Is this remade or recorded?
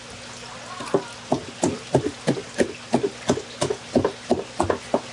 recorded